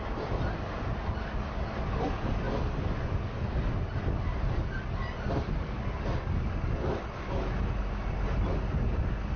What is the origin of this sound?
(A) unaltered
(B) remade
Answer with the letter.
A